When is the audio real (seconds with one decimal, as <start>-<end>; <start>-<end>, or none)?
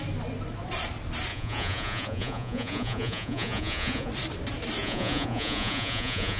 0.0-1.3; 4.1-4.8